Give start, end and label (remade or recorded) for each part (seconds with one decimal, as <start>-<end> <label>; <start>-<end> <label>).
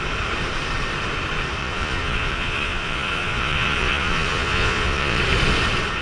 0.0-1.6 recorded; 1.6-5.2 remade; 5.2-6.0 recorded